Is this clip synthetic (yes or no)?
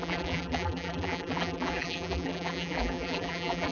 yes